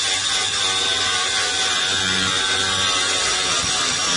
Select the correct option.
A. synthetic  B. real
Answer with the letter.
B